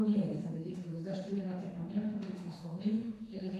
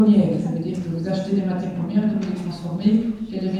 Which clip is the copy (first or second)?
first